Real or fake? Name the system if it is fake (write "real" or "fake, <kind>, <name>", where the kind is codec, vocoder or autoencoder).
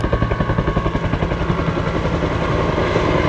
real